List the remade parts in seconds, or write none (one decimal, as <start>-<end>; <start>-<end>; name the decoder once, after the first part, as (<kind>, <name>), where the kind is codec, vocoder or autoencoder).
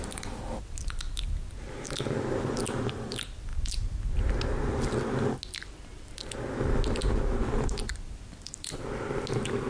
none